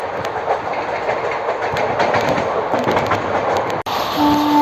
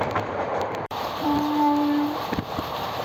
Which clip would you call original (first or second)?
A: first